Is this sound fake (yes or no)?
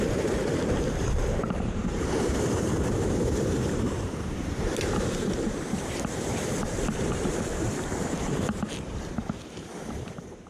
yes